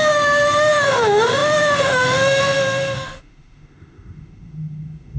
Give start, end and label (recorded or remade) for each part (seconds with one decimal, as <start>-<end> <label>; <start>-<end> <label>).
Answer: 0.0-5.2 remade